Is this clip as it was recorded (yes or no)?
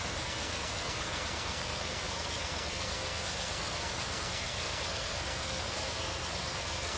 no